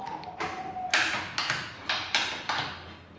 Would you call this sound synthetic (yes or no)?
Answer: no